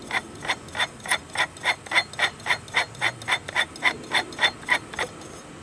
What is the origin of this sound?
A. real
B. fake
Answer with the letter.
A